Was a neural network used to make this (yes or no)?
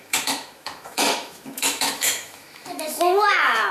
yes